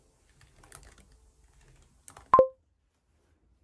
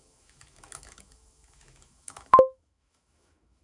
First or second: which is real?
first